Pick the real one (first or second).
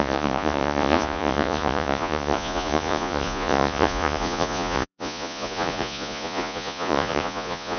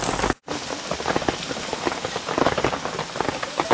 second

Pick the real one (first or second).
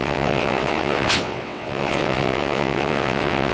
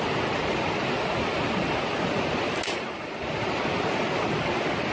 second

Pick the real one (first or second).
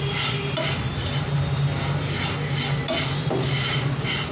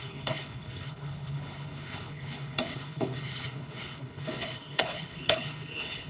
first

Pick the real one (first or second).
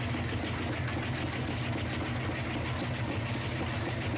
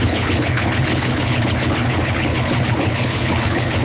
first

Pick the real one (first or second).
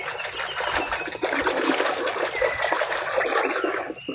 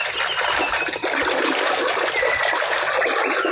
first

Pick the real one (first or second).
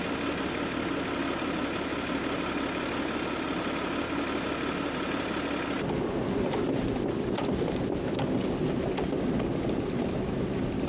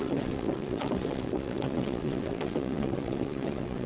first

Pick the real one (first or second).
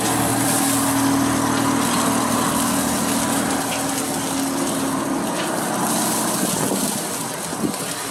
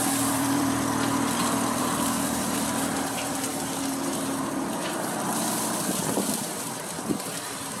first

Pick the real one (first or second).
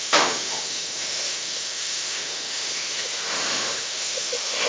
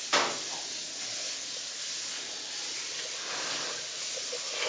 second